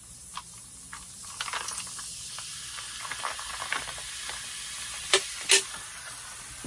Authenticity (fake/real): real